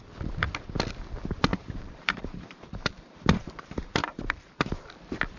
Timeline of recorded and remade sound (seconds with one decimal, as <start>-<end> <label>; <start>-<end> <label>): 0.0-1.5 recorded; 1.5-4.7 remade; 4.7-5.4 recorded